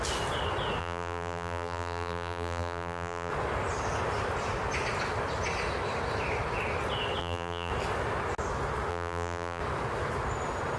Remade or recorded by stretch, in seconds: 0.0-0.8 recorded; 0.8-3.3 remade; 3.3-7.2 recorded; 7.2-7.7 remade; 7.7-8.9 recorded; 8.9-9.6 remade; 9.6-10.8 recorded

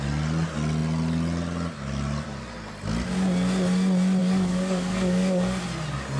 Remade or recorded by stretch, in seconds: 0.0-4.2 recorded; 4.2-5.6 remade; 5.6-6.2 recorded

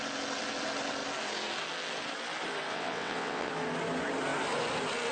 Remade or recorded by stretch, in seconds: 0.0-2.7 recorded; 2.7-3.5 remade; 3.5-5.1 recorded

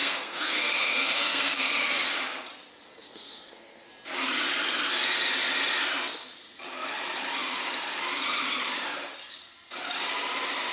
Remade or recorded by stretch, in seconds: 0.0-1.7 remade; 1.7-3.0 recorded; 3.0-3.9 remade; 3.9-10.7 recorded

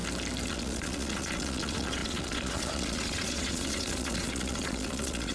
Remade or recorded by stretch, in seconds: 0.0-0.5 recorded; 0.5-5.3 remade